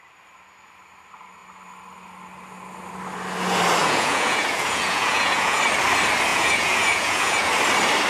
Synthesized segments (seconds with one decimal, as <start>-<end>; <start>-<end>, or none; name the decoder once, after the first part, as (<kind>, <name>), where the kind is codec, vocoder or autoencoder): 3.8-5.6 (vocoder, Vocos); 6.3-7.5